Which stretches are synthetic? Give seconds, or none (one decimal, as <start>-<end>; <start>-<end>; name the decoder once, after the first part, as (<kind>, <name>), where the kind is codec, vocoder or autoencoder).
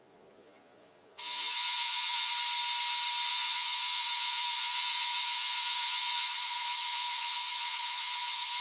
0.0-2.3 (vocoder, Vocos); 3.3-8.6